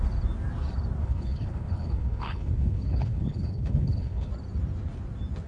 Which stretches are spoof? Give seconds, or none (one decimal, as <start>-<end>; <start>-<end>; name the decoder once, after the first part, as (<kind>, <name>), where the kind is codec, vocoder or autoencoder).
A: 1.0-4.3 (codec, HILCodec)